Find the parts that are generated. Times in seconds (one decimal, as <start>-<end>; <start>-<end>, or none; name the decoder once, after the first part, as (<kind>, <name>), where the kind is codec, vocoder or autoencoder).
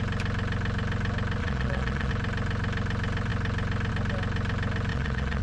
1.4-2.1 (vocoder, Vocos); 4.9-5.4